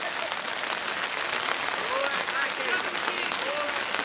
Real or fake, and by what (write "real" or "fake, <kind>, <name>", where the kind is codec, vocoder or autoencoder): real